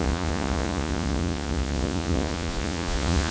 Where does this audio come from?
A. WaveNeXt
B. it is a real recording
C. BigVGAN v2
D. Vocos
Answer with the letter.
D